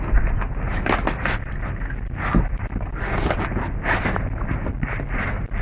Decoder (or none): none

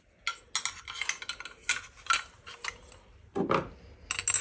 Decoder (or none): none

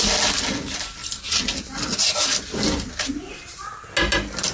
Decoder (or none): none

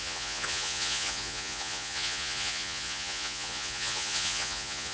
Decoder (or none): vocoder, Vocos